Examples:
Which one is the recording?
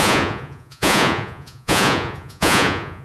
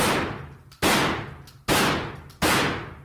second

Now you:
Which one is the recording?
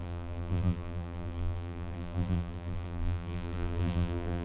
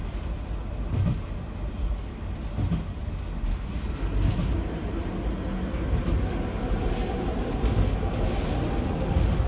second